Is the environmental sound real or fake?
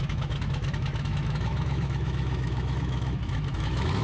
fake